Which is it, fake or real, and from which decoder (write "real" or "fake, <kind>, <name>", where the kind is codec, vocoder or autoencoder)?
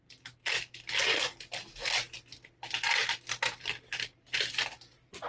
real